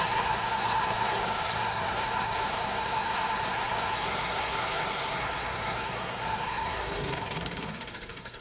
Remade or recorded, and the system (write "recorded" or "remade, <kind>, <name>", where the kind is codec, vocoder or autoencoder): remade, codec, SNAC